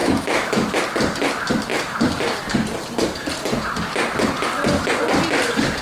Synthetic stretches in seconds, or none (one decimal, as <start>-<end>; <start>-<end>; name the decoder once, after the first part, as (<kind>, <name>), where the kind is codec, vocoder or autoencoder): 0.0-0.7 (autoencoder, DAC-VAE)